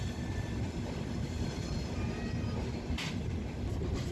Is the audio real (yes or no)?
yes